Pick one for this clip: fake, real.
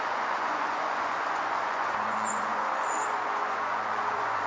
fake